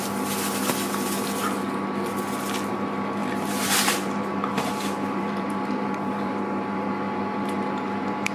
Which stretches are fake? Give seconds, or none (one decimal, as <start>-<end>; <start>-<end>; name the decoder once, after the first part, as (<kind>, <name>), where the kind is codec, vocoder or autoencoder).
3.2-6.9 (vocoder, BigVGAN v2)